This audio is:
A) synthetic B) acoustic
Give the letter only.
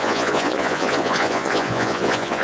A